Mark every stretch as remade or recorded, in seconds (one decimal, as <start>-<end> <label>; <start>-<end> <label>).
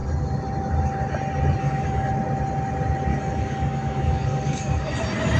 0.0-1.6 recorded; 1.6-2.1 remade; 2.1-3.1 recorded; 3.1-4.9 remade; 4.9-5.4 recorded